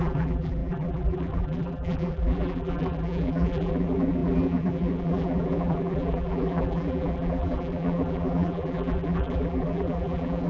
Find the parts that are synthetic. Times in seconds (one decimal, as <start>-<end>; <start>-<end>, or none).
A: 0.0-10.5